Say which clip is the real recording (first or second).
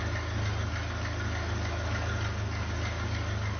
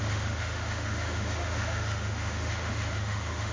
first